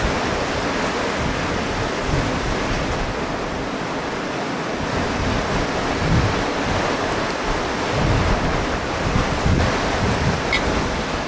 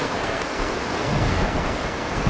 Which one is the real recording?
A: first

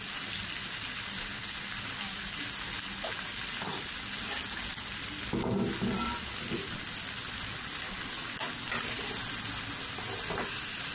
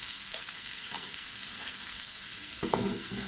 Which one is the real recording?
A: first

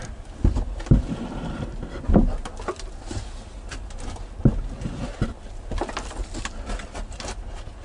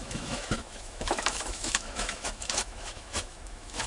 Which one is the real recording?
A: first